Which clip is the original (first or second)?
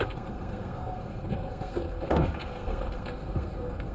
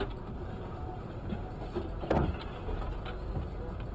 second